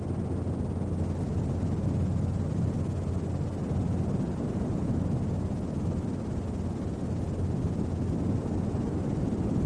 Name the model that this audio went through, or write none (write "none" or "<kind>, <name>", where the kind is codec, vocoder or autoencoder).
none